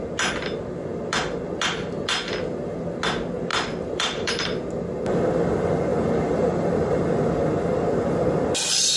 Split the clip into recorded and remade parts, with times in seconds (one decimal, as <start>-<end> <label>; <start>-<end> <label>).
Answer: 0.0-3.5 recorded; 3.5-4.6 remade; 4.6-5.9 recorded; 5.9-7.0 remade; 7.0-9.0 recorded